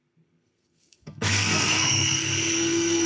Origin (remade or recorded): remade